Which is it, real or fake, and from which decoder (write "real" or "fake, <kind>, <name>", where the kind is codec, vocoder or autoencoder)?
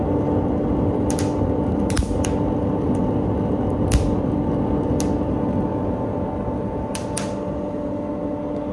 real